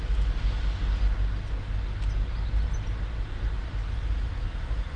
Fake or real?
real